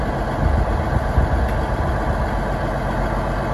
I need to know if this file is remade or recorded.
recorded